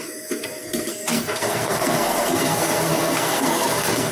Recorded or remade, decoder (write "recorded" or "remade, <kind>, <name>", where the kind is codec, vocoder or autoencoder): remade, codec, SNAC